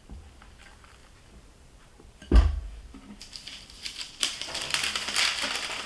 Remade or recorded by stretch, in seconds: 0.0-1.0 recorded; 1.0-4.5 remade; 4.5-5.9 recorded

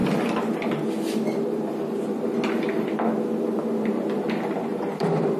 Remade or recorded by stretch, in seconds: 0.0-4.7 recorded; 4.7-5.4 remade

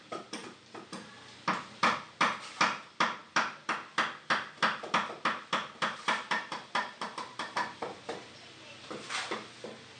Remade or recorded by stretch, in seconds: 0.0-0.4 remade; 0.4-1.8 recorded; 1.8-10.0 remade